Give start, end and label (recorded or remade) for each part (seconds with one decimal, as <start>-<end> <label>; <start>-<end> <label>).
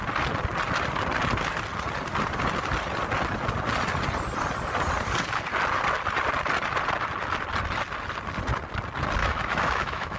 0.0-9.2 recorded; 9.2-10.2 remade